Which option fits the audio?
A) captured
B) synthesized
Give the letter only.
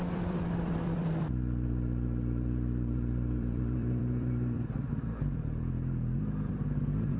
B